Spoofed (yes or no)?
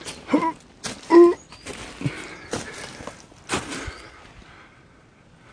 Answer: no